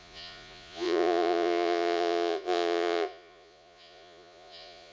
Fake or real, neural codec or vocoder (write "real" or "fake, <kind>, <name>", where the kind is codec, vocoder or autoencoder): fake, vocoder, Vocos